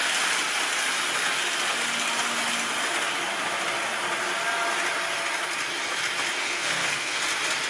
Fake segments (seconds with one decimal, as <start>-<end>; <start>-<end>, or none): 6.4-7.2